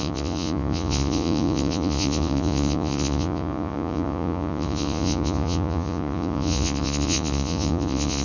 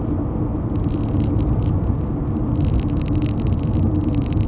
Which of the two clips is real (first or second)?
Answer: second